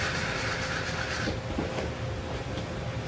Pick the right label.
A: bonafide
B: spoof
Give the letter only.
A